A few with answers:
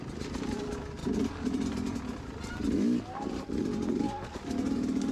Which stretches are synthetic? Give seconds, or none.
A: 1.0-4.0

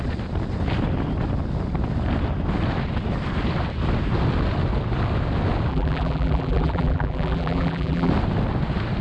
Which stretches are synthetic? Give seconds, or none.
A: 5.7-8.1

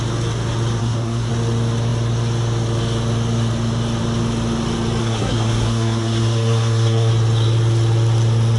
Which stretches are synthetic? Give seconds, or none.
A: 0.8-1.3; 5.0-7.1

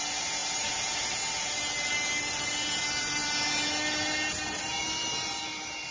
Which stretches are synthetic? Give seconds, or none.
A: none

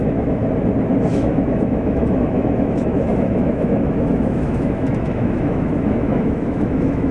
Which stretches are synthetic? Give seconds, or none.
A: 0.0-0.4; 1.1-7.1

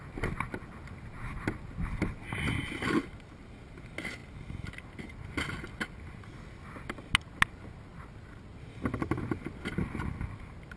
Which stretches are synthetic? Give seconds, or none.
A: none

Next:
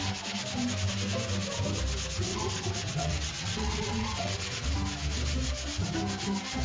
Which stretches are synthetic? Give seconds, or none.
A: 2.3-4.7

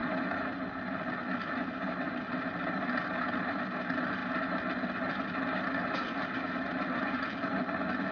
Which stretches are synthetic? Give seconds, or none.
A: none